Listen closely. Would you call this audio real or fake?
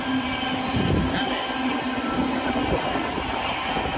real